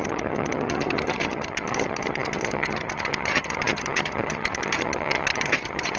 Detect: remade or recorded remade